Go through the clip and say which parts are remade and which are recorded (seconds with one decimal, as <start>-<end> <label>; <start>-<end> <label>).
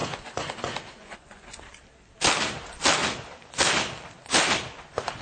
0.0-1.6 remade; 1.6-5.2 recorded